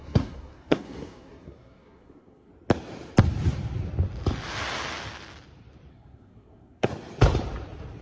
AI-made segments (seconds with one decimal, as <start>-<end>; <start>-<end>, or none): 0.0-2.5; 5.9-6.9